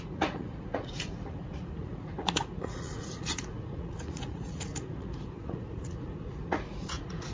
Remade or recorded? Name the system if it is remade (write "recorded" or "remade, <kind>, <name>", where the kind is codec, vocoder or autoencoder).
remade, vocoder, Vocos